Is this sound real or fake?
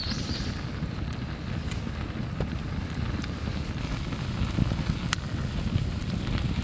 real